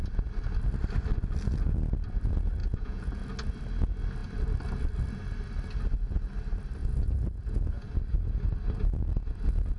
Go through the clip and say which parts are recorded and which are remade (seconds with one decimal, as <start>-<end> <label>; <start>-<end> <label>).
0.0-2.6 recorded; 2.6-3.2 remade; 3.2-6.8 recorded; 6.8-7.9 remade; 7.9-9.8 recorded